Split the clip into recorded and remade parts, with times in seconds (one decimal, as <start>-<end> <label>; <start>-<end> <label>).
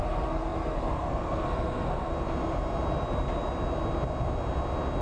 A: 0.0-2.1 remade; 2.1-5.0 recorded